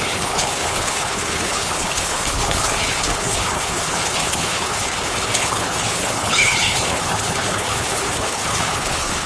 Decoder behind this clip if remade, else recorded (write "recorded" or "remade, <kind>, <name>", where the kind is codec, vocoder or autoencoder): remade, codec, HILCodec